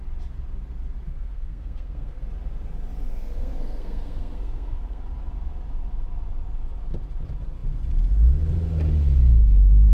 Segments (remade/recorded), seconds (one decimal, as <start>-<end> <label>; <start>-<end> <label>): 0.0-1.1 recorded; 1.1-2.2 remade; 2.2-3.1 recorded; 3.1-5.0 remade; 5.0-9.9 recorded